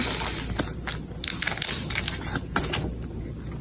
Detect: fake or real real